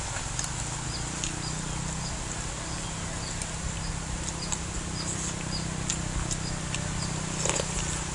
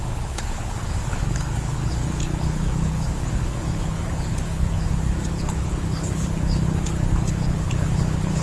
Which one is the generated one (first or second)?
second